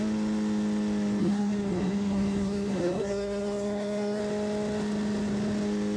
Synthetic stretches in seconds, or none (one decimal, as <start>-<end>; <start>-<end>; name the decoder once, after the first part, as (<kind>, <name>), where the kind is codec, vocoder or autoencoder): 1.2-4.2 (codec, SNAC)